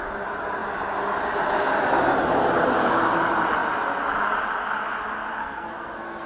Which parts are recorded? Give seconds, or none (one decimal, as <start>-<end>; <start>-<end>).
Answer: 0.0-5.4